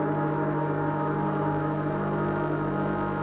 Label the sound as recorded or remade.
recorded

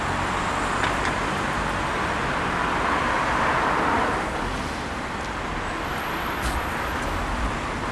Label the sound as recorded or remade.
recorded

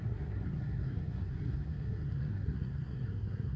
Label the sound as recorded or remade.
remade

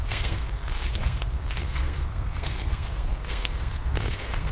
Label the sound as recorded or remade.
remade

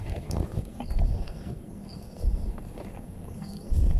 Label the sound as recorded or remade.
remade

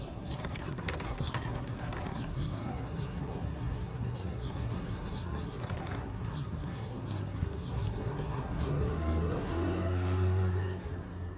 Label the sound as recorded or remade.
remade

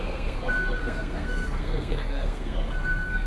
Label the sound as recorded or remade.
remade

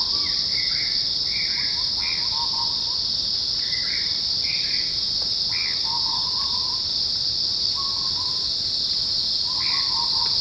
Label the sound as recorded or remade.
recorded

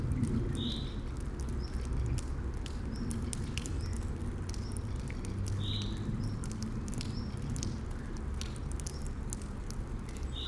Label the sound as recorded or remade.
recorded